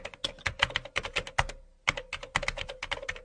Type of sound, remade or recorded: recorded